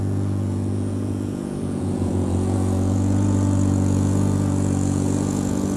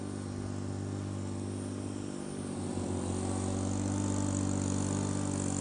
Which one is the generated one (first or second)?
first